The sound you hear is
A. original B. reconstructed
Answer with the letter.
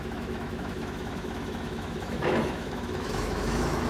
B